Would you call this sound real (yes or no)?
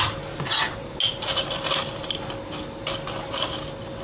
yes